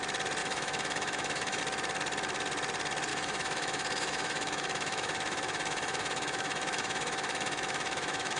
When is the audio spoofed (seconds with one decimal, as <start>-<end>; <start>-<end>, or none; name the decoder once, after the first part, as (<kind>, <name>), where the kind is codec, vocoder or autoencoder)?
0.4-1.6 (autoencoder, DAC-VAE); 3.1-8.4